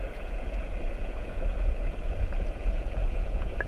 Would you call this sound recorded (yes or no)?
no